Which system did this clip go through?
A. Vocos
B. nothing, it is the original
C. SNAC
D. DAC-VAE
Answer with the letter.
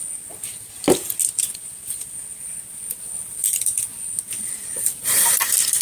B